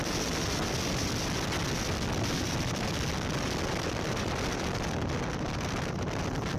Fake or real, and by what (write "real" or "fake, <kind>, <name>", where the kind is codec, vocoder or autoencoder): real